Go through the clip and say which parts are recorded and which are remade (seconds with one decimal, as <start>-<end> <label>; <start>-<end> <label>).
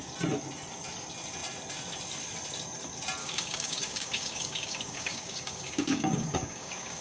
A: 0.0-3.2 recorded; 3.2-7.0 remade